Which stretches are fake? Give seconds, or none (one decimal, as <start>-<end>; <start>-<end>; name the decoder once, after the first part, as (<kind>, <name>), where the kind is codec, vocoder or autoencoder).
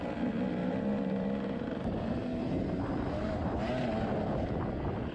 0.6-3.7 (vocoder, BigVGAN v2)